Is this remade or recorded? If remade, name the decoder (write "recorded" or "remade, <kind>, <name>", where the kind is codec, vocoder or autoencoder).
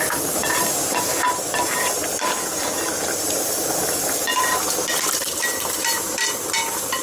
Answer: remade, vocoder, BigVGAN v2